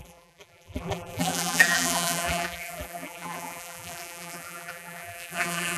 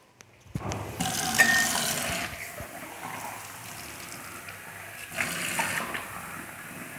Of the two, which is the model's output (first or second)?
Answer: first